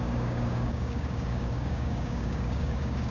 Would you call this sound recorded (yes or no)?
no